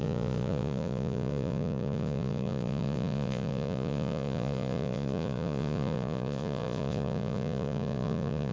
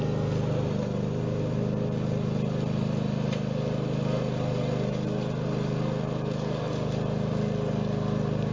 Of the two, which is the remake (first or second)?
first